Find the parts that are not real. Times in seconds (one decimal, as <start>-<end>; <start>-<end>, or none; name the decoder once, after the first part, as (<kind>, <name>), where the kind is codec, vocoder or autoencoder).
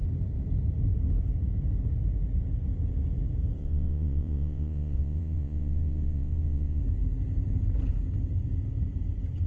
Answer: 3.6-6.8 (vocoder, Vocos)